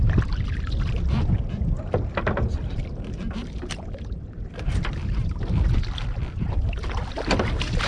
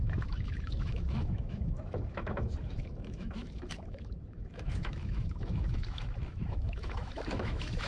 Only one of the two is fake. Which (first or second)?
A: second